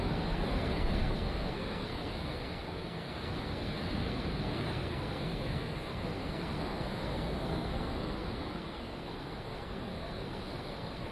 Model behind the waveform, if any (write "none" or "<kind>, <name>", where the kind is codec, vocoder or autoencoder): codec, SNAC